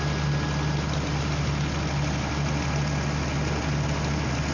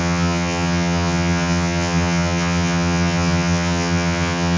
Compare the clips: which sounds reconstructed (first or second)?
second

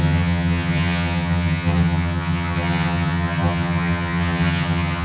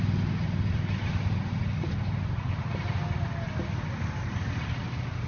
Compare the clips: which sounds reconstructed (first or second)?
first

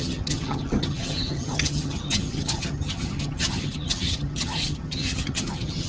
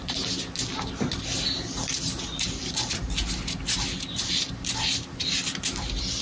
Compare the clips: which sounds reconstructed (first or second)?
first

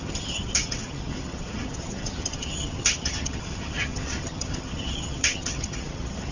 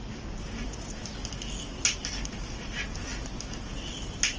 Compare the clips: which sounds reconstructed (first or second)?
first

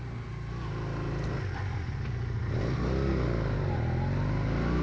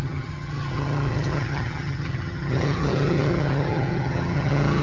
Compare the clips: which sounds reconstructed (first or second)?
second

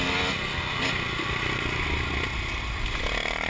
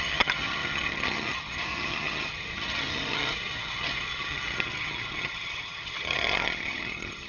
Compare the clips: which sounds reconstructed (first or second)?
second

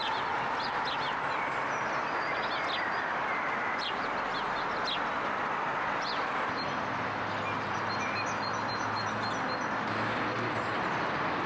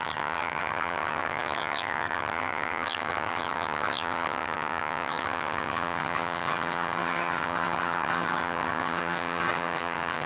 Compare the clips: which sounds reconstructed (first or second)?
second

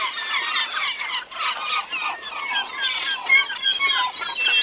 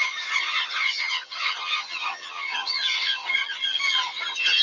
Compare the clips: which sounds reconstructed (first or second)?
second